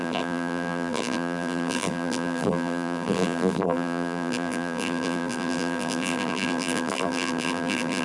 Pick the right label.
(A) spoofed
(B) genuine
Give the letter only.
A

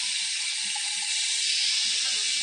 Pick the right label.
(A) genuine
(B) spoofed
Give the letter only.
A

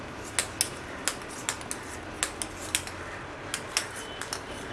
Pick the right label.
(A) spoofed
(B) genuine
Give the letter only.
B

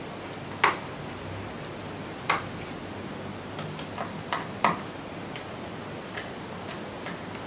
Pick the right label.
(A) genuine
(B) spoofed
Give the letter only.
A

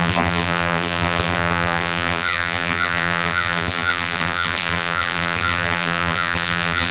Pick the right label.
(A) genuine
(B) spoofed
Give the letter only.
B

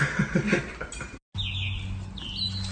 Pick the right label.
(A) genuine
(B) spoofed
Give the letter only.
A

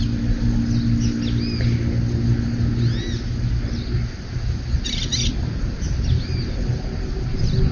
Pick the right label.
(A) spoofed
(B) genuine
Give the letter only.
B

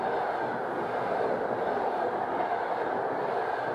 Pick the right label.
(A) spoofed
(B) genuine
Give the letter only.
B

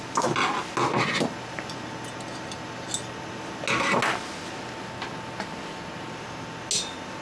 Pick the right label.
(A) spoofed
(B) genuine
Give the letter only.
B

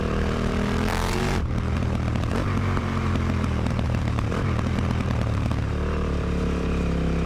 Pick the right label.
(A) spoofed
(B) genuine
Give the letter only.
A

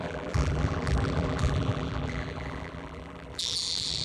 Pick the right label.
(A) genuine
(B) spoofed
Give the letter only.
B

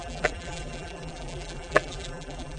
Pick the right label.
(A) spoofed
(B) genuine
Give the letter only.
A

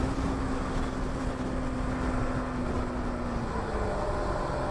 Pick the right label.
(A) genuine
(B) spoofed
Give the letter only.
A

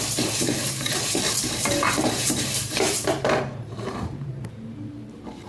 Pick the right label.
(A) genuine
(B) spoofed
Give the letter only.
B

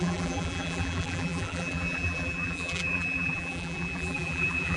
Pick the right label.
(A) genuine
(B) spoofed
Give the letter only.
B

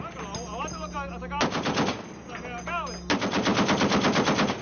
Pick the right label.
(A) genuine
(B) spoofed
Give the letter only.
A